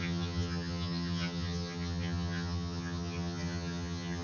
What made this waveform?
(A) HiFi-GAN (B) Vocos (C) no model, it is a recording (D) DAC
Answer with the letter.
A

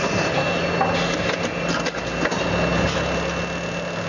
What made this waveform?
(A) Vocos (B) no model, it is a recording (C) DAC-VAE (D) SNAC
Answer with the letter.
B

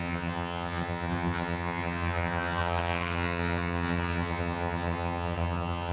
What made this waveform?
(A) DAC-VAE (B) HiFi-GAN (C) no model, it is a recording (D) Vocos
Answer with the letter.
B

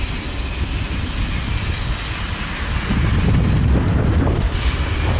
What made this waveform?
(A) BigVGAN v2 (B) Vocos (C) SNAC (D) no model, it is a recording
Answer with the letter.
D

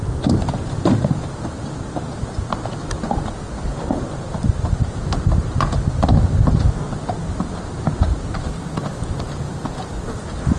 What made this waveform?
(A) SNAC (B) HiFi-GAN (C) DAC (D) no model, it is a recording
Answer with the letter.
D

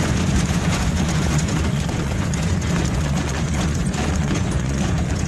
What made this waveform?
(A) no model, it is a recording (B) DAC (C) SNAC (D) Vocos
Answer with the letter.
D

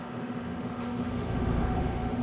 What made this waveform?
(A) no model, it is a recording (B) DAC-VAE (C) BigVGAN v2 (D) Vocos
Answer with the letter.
B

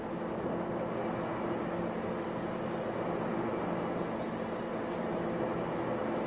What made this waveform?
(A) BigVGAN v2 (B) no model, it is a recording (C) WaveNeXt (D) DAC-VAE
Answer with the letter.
B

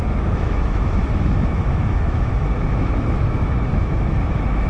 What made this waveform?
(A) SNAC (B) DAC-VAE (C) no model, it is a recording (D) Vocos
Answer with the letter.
B